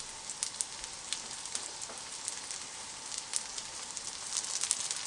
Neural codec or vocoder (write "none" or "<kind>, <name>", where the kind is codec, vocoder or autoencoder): none